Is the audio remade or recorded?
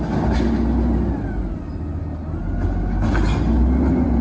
recorded